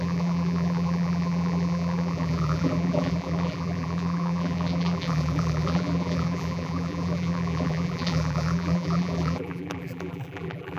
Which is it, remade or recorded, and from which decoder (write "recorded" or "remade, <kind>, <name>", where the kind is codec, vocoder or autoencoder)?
remade, vocoder, BigVGAN v2